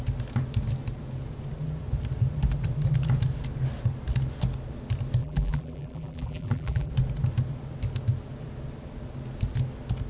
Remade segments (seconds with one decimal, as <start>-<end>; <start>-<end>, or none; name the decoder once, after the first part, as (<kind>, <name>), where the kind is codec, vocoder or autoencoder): 5.2-6.9 (vocoder, BigVGAN v2)